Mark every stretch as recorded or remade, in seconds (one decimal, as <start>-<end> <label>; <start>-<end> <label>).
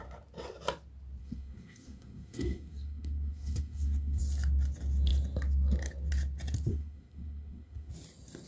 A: 0.0-1.2 recorded; 1.2-4.2 remade; 4.2-6.7 recorded; 6.7-7.9 remade; 7.9-8.5 recorded